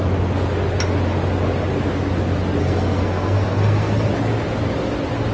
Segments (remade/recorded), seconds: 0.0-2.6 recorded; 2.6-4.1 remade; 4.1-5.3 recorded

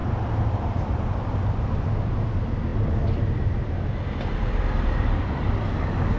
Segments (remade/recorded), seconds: 0.0-6.2 recorded

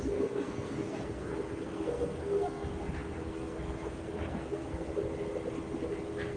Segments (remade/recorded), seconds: 0.0-4.9 remade; 4.9-5.9 recorded; 5.9-6.4 remade